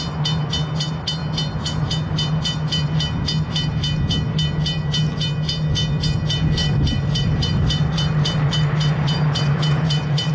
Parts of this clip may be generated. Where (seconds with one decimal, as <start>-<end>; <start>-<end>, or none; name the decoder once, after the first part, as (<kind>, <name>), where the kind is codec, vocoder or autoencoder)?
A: 6.6-10.3 (vocoder, BigVGAN v2)